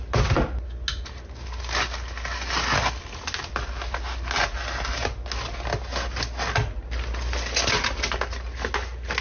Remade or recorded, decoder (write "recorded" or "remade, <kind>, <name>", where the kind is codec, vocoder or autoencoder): recorded